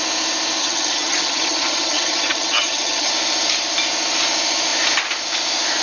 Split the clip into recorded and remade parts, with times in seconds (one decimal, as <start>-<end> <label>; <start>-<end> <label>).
0.0-0.6 recorded; 0.6-3.1 remade; 3.1-5.8 recorded